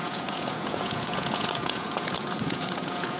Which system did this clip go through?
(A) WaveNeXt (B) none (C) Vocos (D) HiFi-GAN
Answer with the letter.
C